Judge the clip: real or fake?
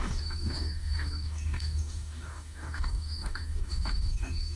fake